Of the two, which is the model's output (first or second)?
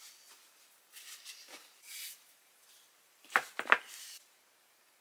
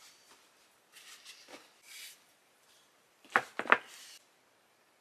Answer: first